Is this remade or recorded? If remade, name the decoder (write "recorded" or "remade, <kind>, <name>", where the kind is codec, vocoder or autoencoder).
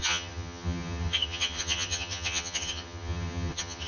remade, vocoder, HiFi-GAN